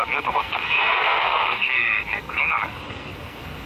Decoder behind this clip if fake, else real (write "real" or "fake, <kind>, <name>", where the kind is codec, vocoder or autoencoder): fake, codec, SNAC